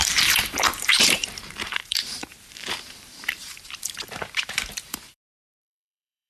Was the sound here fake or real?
fake